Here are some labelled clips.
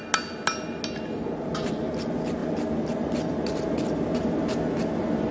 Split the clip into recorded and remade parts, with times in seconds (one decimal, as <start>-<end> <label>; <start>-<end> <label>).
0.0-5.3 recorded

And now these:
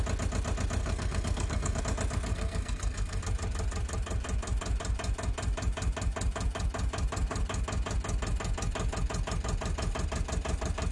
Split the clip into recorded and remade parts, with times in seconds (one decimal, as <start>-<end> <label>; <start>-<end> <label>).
0.0-0.8 recorded; 0.8-1.8 remade; 1.8-2.3 recorded; 2.3-3.2 remade; 3.2-10.9 recorded

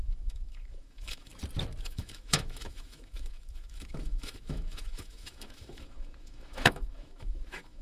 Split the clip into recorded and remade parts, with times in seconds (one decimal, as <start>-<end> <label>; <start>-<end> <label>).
0.0-1.3 remade; 1.3-1.8 recorded; 1.8-7.8 remade

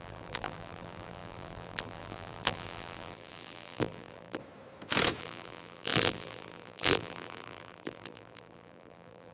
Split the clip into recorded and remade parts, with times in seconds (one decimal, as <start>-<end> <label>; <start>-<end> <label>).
0.0-4.4 remade; 4.4-5.2 recorded; 5.2-9.3 remade

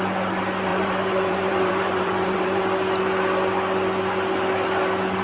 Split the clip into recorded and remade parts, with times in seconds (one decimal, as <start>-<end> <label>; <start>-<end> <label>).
0.0-0.7 recorded; 0.7-2.6 remade; 2.6-5.2 recorded